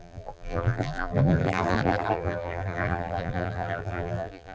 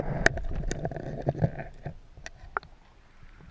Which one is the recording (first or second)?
second